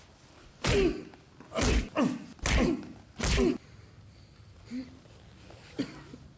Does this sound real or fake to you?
real